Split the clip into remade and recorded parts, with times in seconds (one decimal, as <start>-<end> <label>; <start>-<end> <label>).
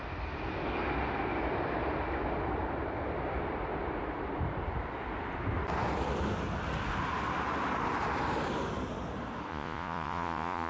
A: 0.0-9.5 recorded; 9.5-10.7 remade